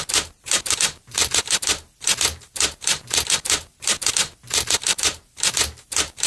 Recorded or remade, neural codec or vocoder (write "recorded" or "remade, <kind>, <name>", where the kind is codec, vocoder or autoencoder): remade, vocoder, BigVGAN v2